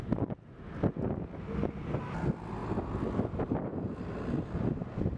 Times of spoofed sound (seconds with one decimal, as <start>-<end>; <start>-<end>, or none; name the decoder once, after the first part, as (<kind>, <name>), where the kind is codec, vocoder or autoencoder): none